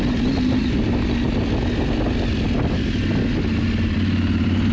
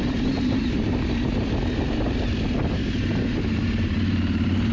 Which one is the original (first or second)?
first